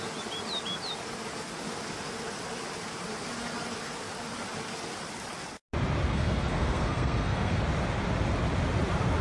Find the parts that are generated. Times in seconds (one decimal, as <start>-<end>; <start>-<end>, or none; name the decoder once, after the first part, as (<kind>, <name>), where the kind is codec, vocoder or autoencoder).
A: 6.1-7.6 (codec, SNAC)